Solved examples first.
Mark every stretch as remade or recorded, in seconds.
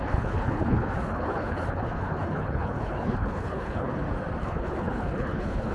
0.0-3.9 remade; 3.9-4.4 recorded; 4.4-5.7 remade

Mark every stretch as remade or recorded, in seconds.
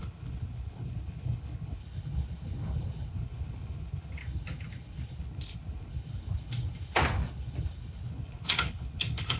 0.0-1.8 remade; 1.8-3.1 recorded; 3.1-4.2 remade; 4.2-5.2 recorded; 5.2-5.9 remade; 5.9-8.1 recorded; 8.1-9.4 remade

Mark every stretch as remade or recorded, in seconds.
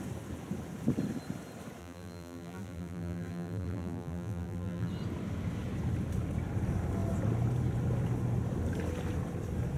0.0-1.8 recorded; 1.8-4.9 remade; 4.9-9.8 recorded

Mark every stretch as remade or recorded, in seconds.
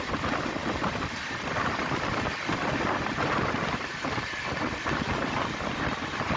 0.0-0.6 recorded; 0.6-4.4 remade; 4.4-6.4 recorded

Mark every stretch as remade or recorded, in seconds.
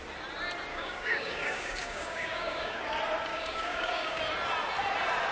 0.0-0.7 recorded; 0.7-2.8 remade; 2.8-3.3 recorded; 3.3-4.2 remade; 4.2-5.3 recorded